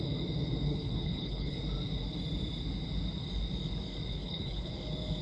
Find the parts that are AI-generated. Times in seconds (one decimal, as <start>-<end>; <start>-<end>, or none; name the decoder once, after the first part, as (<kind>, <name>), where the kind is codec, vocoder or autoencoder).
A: 0.7-1.6 (codec, HILCodec); 4.1-4.7